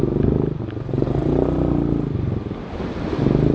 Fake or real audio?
real